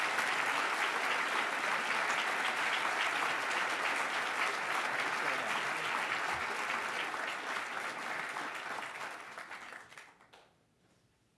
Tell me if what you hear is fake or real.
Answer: real